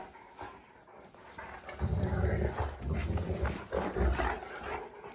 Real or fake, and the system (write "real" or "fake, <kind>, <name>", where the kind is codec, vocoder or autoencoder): real